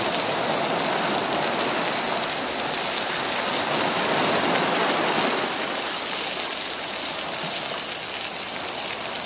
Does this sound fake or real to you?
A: real